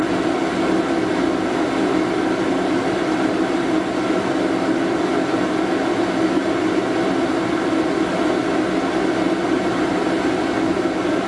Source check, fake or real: real